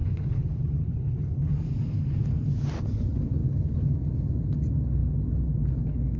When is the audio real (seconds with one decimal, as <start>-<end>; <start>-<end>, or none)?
1.5-6.2

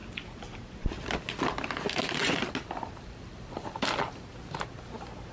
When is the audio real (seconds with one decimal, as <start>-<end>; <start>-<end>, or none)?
0.8-5.3

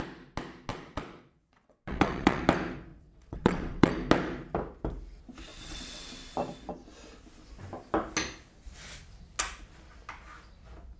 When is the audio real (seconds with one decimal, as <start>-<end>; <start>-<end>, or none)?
0.0-0.7; 2.4-2.9; 3.9-5.5; 6.1-11.0

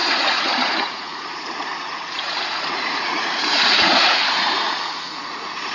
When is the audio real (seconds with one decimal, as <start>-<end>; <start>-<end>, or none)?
none